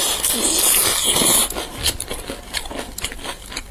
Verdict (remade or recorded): recorded